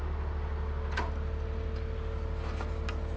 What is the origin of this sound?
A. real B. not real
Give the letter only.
A